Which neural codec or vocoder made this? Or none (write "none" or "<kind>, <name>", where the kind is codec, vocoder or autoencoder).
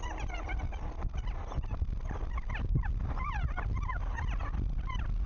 none